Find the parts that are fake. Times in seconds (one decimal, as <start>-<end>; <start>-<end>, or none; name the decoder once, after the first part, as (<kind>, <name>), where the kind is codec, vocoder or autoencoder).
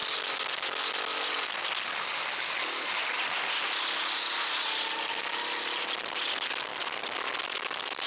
none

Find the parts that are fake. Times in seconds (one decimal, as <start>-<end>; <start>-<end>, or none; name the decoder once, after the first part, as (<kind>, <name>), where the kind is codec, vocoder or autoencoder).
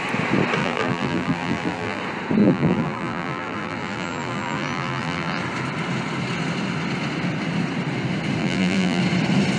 0.6-2.0 (vocoder, BigVGAN v2); 2.4-5.4; 8.4-9.0